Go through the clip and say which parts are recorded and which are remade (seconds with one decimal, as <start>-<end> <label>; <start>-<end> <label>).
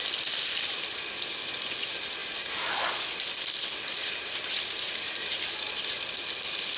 0.0-6.8 recorded